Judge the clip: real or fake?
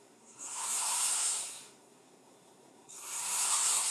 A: fake